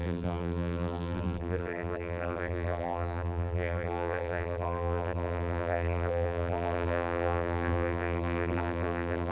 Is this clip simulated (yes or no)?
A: yes